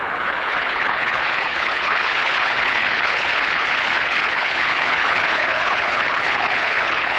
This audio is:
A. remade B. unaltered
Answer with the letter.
A